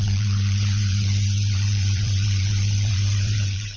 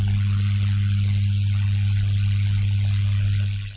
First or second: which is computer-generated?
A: first